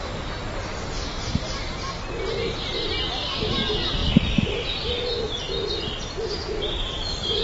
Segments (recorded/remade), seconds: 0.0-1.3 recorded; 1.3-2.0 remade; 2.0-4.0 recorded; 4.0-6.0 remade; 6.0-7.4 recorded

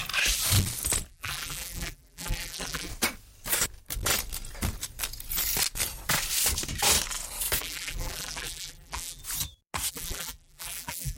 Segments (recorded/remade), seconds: 0.0-1.1 recorded; 1.1-2.9 remade; 2.9-7.6 recorded; 7.6-9.2 remade; 9.2-9.9 recorded; 9.9-11.2 remade

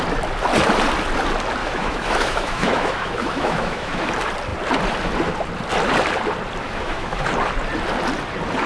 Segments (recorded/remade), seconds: 0.0-1.6 recorded; 1.6-4.1 remade; 4.1-6.6 recorded; 6.6-7.2 remade; 7.2-8.7 recorded

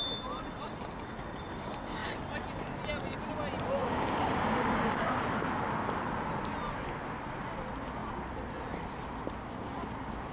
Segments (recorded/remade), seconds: 0.0-3.8 recorded; 3.8-5.2 remade; 5.2-10.3 recorded

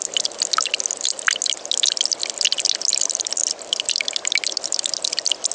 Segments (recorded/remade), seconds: 0.0-5.5 recorded

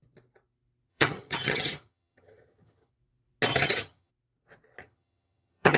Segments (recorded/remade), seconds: 0.0-0.9 recorded; 0.9-2.9 remade; 2.9-3.5 recorded; 3.5-4.1 remade; 4.1-4.8 recorded; 4.8-5.8 remade